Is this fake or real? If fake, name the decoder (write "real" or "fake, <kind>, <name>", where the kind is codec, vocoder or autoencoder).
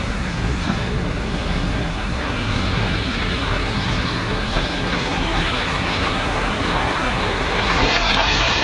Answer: fake, codec, SNAC